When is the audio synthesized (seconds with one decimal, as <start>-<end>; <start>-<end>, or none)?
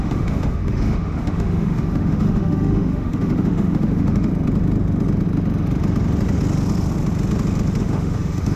0.0-4.3; 7.8-8.6